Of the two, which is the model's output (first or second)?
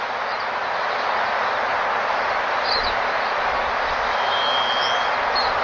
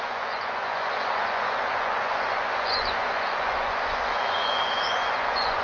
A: second